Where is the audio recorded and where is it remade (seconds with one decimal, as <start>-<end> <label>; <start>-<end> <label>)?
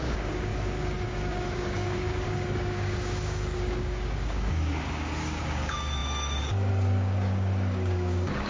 0.0-8.5 remade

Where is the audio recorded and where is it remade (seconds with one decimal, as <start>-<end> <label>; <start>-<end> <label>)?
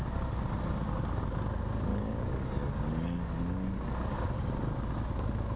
0.0-1.9 recorded; 1.9-2.8 remade; 2.8-5.6 recorded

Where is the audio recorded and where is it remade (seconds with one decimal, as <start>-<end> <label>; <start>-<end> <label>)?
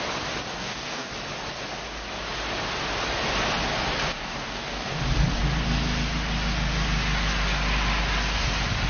0.0-0.6 recorded; 0.6-1.1 remade; 1.1-4.4 recorded; 4.4-5.0 remade; 5.0-8.9 recorded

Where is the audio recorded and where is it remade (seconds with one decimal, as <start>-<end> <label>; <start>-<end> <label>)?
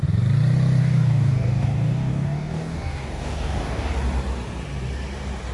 0.0-0.8 recorded; 0.8-3.9 remade; 3.9-5.5 recorded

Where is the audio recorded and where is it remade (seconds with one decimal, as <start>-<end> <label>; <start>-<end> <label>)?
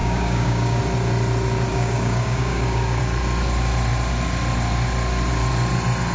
0.0-0.8 remade; 0.8-1.7 recorded; 1.7-3.0 remade; 3.0-6.1 recorded